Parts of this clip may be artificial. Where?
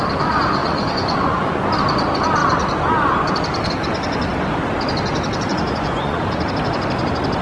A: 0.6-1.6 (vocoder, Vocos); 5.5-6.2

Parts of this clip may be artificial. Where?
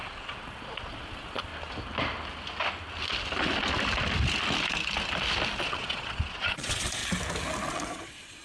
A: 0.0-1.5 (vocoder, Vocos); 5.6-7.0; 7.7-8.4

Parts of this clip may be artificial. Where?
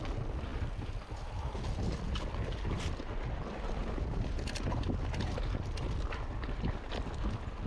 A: none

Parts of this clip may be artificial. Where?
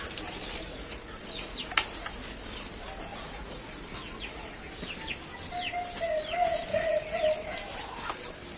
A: 0.7-1.7 (vocoder, Vocos); 3.1-4.5; 6.7-7.2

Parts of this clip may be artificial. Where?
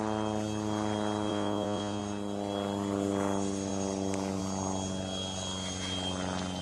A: 1.3-2.0 (vocoder, Vocos)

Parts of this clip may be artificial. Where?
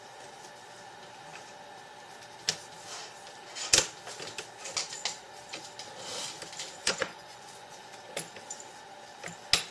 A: 6.8-7.8 (vocoder, Vocos)